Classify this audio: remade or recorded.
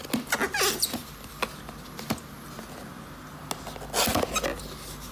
recorded